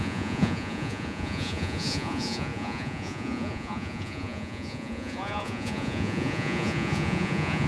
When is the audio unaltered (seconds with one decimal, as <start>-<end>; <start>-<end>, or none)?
none